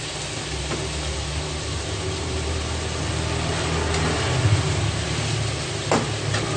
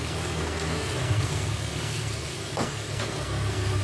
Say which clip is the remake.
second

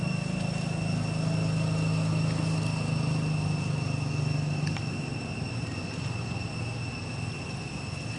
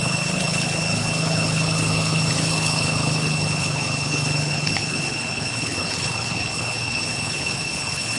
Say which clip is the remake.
second